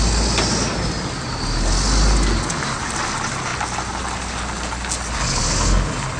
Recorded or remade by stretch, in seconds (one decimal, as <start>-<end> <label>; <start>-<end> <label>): 0.0-6.2 recorded